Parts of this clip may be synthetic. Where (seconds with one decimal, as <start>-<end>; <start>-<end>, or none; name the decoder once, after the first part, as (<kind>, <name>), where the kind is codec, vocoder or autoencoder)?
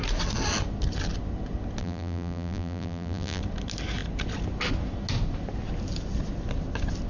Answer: 1.8-3.4 (vocoder, BigVGAN v2)